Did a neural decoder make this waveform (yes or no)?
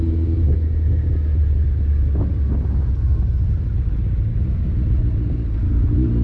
no